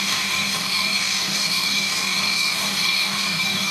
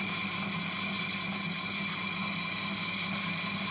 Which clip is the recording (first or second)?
second